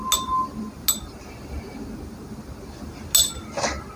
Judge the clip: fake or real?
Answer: real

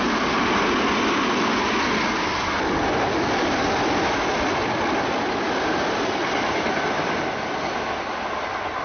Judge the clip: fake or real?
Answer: real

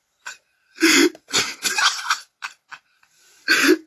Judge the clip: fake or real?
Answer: real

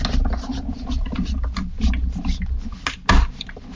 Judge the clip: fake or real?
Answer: real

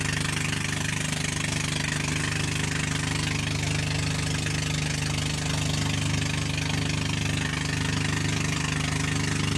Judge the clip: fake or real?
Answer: real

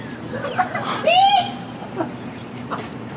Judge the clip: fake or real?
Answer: real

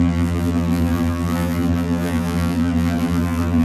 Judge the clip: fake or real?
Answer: fake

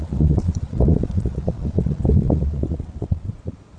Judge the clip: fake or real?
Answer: fake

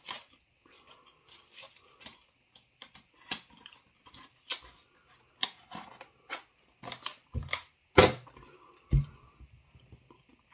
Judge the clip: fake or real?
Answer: real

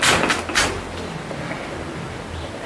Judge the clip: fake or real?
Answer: real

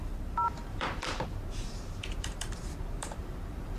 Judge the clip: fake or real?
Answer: fake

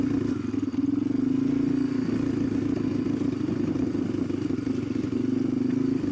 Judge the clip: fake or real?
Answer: real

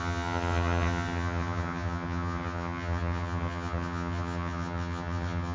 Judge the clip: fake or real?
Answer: fake